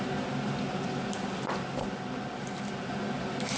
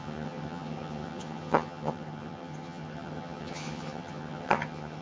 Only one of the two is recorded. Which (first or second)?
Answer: first